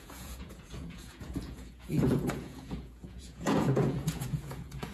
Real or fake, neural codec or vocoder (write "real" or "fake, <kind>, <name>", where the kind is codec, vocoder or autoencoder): fake, vocoder, Vocos